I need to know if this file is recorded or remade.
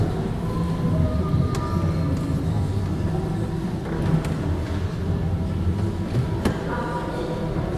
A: recorded